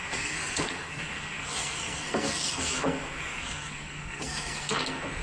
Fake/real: fake